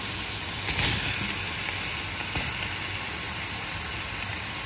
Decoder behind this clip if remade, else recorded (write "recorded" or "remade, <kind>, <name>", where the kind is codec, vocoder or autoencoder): recorded